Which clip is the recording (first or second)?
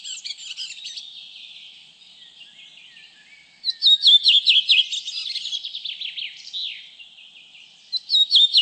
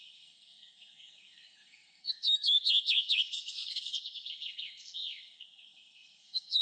first